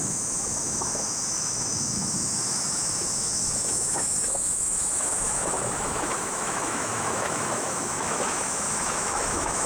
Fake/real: fake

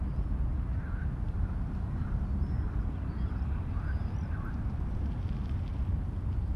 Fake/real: real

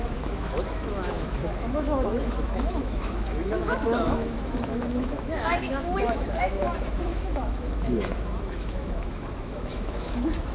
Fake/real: fake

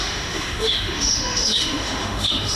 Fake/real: fake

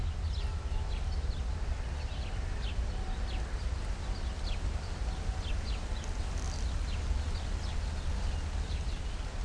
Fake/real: real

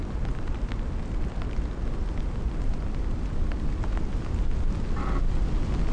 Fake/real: real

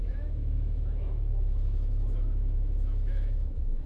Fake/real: fake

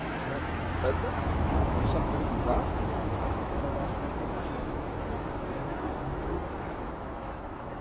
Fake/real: fake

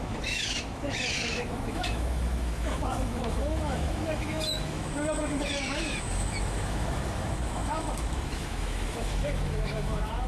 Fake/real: fake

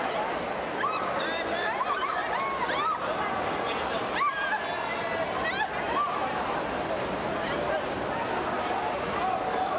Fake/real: real